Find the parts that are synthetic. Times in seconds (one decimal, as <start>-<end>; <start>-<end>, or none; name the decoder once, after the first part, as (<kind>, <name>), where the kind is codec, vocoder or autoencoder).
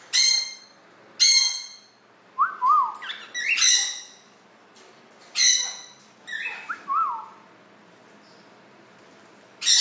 none